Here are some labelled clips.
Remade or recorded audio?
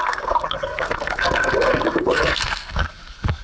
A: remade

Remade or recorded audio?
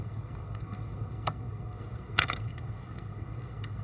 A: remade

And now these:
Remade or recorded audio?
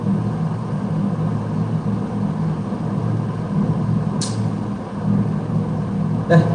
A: recorded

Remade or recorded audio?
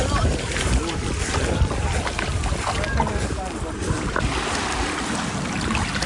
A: recorded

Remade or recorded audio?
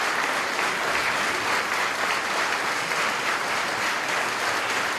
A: recorded